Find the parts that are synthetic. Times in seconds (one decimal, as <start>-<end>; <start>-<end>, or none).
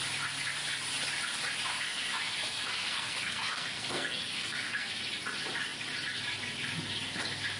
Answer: 1.7-5.0